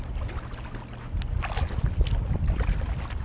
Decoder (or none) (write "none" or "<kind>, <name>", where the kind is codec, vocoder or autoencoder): none